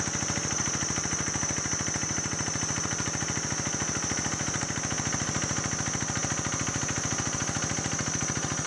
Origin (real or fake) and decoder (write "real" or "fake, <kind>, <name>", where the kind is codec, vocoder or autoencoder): real